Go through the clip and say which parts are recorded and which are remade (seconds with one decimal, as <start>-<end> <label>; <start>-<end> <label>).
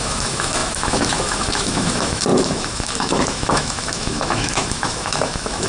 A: 0.0-5.7 remade